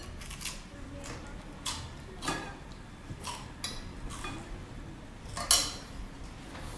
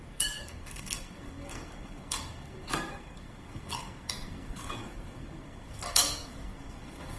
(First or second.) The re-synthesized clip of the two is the second